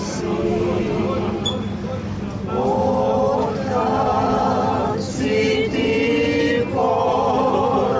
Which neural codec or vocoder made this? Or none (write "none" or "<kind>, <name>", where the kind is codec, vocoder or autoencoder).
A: none